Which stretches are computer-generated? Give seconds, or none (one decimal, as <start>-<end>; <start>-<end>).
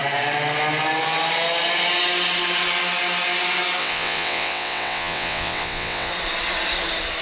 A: 3.8-6.1